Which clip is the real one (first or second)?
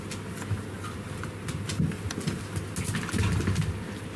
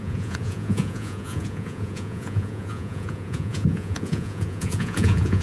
first